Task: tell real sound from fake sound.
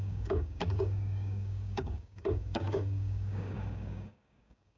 fake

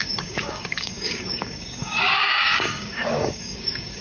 fake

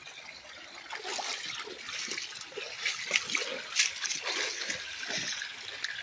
real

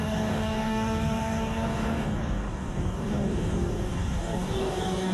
fake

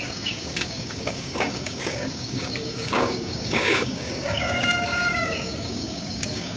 fake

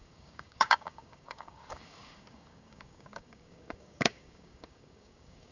fake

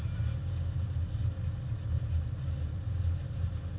real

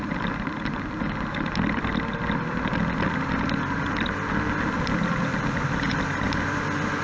real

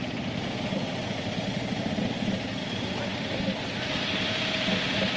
real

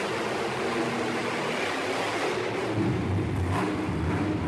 real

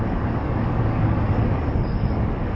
fake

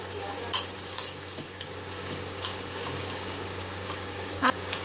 fake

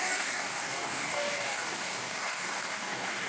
fake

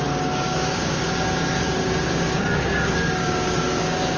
fake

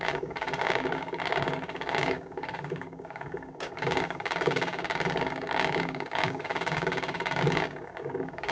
fake